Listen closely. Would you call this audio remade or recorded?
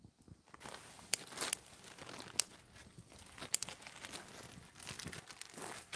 recorded